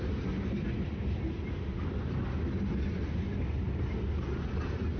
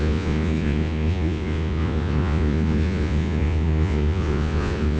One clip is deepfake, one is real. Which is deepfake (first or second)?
second